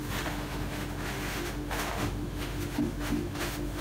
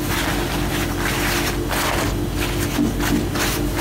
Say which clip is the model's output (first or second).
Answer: first